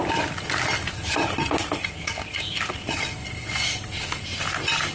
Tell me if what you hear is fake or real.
real